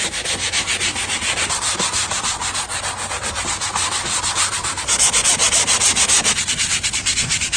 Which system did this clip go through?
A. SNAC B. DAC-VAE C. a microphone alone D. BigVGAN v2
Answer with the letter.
C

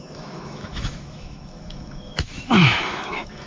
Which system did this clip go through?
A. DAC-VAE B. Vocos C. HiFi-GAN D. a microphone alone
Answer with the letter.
A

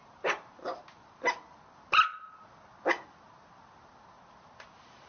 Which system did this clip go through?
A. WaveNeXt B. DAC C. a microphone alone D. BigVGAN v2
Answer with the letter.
C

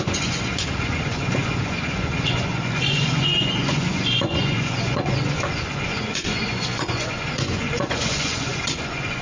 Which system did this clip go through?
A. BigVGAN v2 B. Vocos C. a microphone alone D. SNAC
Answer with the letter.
B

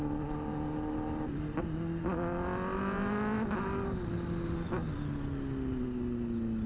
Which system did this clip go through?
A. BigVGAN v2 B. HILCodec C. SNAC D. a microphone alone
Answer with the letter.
D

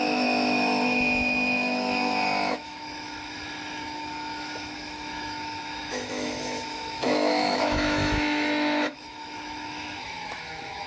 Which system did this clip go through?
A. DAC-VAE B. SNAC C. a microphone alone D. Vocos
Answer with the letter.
A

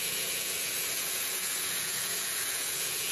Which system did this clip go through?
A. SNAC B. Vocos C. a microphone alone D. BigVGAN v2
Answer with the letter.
B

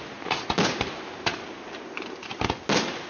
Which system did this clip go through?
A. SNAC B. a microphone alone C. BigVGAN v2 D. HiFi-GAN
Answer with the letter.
B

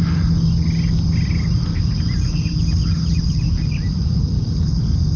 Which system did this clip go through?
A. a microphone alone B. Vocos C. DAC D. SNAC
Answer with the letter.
A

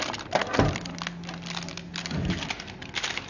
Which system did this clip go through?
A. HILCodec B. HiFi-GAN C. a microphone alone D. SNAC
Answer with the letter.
C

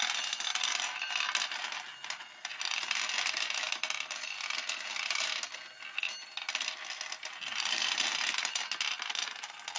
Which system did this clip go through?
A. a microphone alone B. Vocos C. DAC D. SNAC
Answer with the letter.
A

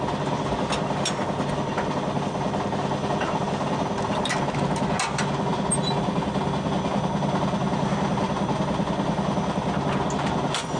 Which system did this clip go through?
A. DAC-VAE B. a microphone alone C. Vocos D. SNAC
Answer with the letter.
B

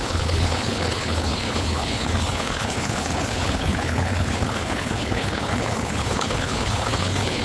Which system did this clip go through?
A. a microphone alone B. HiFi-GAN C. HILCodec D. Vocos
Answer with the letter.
C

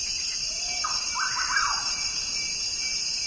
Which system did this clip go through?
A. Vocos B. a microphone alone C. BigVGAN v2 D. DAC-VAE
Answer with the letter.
B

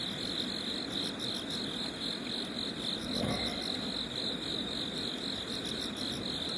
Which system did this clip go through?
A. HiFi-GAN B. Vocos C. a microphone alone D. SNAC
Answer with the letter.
C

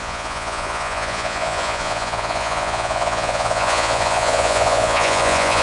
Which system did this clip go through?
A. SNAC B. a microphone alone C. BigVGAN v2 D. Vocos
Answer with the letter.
D